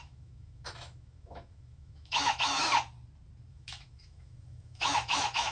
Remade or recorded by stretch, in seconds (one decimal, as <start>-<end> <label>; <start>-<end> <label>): 0.0-2.7 remade; 2.7-3.5 recorded; 3.5-5.5 remade